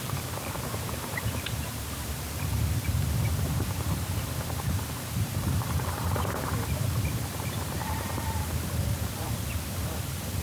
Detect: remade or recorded remade